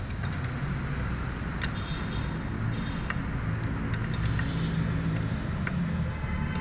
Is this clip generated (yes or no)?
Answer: no